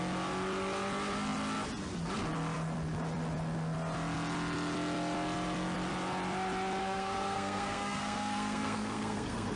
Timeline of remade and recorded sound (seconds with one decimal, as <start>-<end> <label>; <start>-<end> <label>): 0.0-6.8 recorded; 6.8-9.6 remade